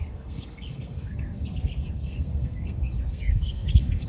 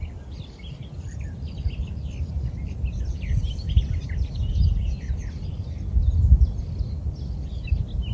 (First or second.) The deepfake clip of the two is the first